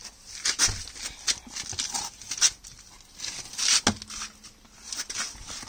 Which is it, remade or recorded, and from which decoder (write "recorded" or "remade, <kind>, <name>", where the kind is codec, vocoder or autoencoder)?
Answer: recorded